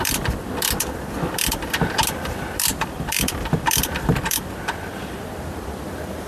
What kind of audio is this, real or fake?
fake